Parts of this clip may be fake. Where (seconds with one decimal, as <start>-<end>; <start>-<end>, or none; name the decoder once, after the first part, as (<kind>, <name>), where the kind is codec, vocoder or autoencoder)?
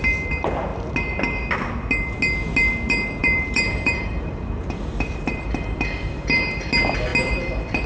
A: 3.2-6.4 (vocoder, BigVGAN v2)